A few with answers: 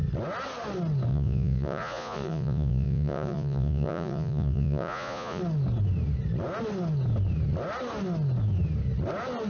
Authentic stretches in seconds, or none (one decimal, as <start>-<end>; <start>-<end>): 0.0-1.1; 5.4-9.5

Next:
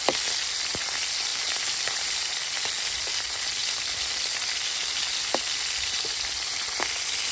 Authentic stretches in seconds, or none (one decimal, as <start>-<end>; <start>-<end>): 0.0-7.3

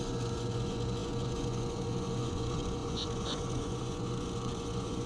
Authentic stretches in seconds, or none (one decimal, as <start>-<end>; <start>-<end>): none

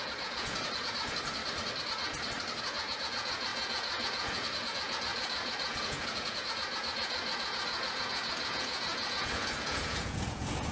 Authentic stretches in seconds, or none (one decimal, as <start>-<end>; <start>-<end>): 1.4-2.6

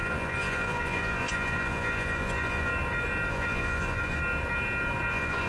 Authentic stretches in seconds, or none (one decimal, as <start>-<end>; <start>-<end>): 2.7-3.3; 4.2-5.1

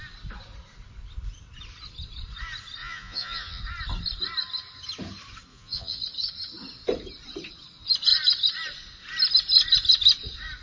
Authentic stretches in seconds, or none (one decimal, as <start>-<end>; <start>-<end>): 0.0-2.8; 3.6-5.5; 6.0-10.6

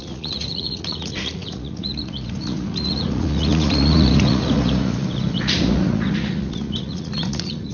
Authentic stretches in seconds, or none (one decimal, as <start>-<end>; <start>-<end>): none

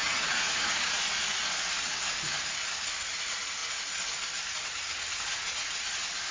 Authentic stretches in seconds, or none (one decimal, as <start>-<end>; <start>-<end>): 1.0-6.3